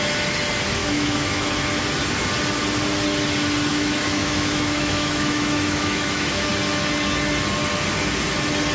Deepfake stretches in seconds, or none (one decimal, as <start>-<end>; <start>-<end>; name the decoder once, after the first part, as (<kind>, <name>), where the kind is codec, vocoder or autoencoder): 0.8-1.5 (autoencoder, DAC-VAE); 3.7-6.5

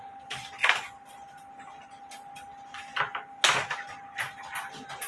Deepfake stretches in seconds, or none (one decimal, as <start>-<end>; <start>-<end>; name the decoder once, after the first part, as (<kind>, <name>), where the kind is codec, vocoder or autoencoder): none

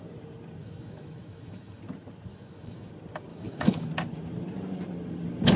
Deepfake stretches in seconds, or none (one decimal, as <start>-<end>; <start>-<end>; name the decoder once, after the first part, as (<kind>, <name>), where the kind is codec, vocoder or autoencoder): 0.6-1.8 (autoencoder, DAC-VAE); 2.3-2.9; 3.3-3.9

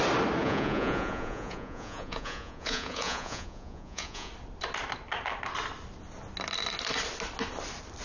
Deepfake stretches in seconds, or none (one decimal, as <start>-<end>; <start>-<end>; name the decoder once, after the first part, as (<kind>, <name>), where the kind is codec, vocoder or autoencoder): 0.4-4.3 (vocoder, Vocos)

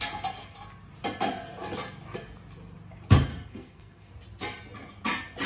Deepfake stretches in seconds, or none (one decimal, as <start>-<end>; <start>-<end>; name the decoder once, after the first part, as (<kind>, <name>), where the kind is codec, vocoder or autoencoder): 3.3-4.1 (codec, SNAC)